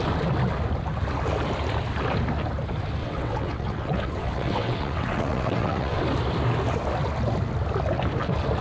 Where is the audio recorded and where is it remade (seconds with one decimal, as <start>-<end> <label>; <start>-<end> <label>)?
0.0-3.0 recorded; 3.0-6.0 remade; 6.0-8.6 recorded